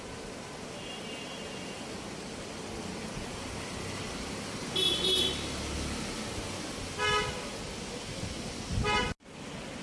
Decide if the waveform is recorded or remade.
recorded